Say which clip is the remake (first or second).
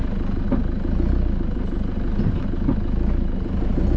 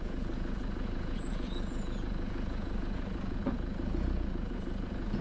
second